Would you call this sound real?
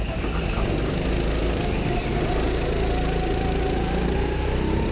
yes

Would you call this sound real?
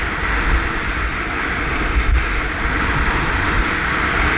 yes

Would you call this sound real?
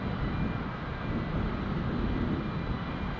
yes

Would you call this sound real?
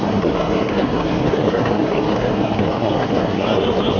no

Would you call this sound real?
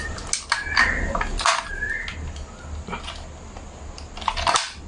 yes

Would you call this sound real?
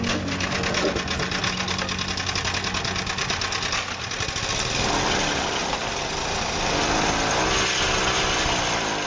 yes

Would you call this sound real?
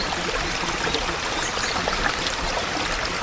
yes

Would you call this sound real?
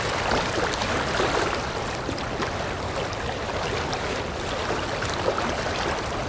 yes